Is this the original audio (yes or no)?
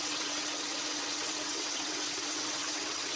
no